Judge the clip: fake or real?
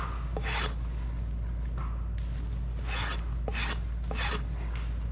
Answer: real